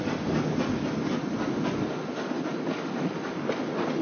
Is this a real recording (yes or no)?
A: yes